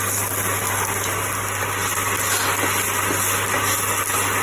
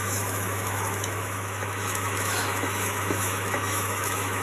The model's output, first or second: second